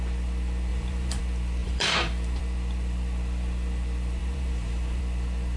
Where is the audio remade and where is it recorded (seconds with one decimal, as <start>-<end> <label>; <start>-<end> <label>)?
0.0-0.7 recorded; 0.7-1.2 remade; 1.2-1.6 recorded; 1.6-2.4 remade; 2.4-4.2 recorded; 4.2-5.0 remade; 5.0-5.6 recorded